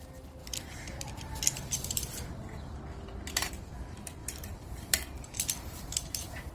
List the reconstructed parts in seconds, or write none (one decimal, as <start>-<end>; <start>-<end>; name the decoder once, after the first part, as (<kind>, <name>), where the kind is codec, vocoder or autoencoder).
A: 0.0-0.4 (vocoder, BigVGAN v2); 3.5-6.5